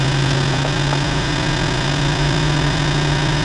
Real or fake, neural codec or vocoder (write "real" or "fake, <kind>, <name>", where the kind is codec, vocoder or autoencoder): real